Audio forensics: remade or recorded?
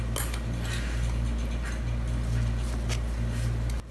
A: recorded